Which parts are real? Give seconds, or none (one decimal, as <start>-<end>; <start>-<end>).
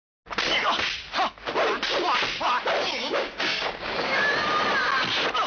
0.0-2.8; 4.3-5.5